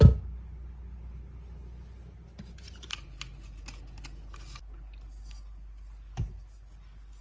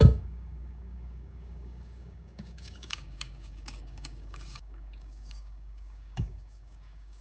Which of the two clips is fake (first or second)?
second